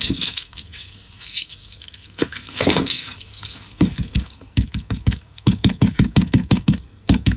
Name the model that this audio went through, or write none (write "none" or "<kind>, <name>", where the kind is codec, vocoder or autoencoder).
codec, SNAC